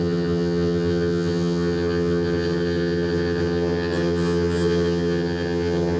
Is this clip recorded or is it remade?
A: remade